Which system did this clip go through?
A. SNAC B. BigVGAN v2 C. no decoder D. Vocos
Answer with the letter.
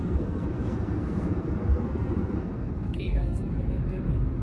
A